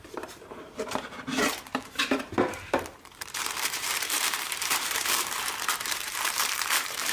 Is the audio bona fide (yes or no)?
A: no